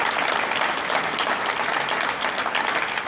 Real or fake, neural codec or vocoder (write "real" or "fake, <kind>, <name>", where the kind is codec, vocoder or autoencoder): real